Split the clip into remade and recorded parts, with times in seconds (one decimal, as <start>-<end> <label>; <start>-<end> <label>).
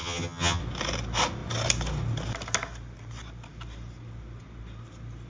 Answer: 0.0-0.6 remade; 0.6-5.3 recorded